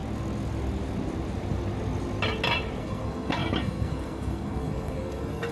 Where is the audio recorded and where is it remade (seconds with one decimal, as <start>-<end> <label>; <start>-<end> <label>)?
0.0-2.8 recorded; 2.8-5.5 remade